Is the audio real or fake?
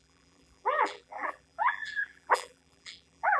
fake